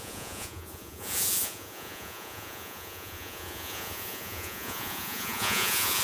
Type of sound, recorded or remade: remade